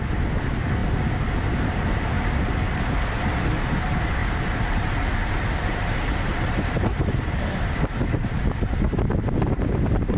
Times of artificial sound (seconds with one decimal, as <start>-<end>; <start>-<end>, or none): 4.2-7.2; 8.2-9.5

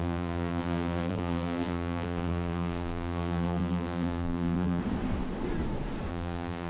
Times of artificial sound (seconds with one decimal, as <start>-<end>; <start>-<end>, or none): 0.0-4.8; 6.1-6.7

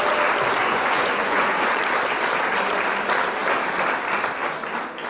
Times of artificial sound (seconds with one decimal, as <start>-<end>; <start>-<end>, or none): 0.6-1.8

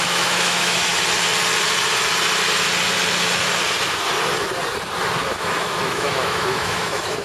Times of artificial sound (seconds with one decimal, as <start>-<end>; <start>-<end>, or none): 0.0-0.9; 5.2-7.2